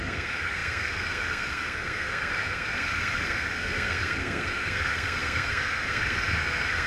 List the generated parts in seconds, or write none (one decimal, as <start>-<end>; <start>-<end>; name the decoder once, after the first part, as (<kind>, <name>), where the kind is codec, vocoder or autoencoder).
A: 0.0-6.9 (codec, SNAC)